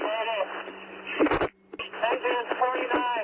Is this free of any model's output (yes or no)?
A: yes